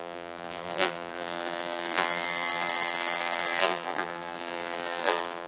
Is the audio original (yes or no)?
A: no